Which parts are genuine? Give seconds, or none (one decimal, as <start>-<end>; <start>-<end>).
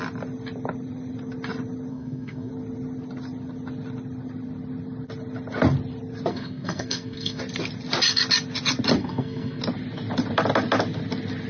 0.0-1.9; 2.5-6.3; 7.4-9.0; 9.6-11.5